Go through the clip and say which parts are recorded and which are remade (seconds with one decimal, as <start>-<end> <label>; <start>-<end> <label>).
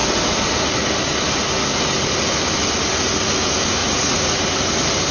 0.0-3.8 recorded; 3.8-4.4 remade; 4.4-5.1 recorded